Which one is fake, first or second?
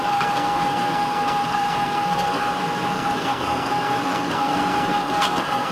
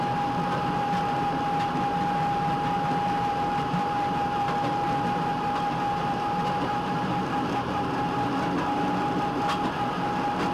first